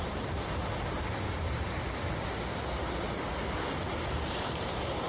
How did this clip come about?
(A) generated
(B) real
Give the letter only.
B